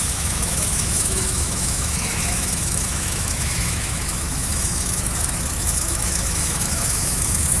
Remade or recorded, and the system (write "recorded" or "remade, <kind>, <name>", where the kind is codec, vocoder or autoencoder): remade, autoencoder, DAC-VAE